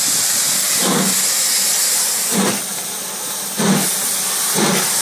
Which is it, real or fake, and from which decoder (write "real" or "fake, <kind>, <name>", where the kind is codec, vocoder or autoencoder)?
real